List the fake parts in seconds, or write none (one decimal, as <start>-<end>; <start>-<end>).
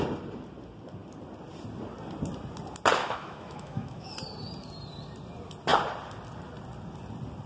3.0-4.1